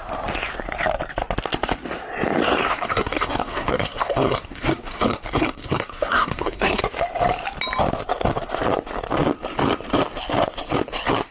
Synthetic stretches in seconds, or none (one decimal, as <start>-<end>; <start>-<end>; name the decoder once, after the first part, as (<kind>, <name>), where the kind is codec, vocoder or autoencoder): 2.6-6.8 (codec, SNAC)